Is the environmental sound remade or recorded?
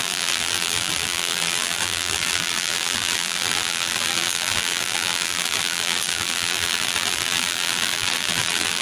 remade